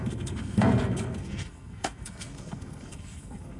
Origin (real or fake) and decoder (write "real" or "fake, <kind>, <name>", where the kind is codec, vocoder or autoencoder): fake, codec, SNAC